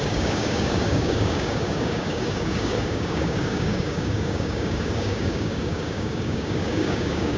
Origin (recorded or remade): remade